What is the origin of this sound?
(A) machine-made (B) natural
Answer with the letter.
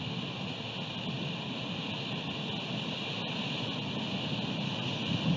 B